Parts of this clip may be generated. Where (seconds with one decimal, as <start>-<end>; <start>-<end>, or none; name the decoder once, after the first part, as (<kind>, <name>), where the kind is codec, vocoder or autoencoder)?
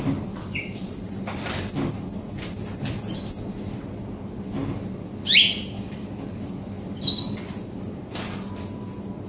none